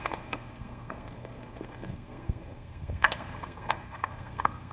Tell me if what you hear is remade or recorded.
remade